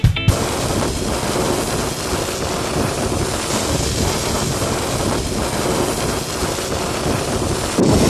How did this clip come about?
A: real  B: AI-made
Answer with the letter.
A